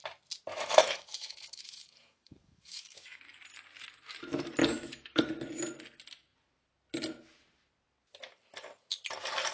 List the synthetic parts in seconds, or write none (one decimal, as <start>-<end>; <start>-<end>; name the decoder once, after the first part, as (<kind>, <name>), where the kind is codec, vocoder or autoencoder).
0.5-3.2 (autoencoder, DAC-VAE); 4.6-5.2